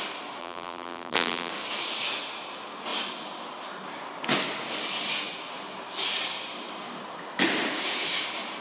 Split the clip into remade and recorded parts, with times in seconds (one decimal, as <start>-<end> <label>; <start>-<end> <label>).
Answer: 0.0-0.4 recorded; 0.4-1.5 remade; 1.5-8.6 recorded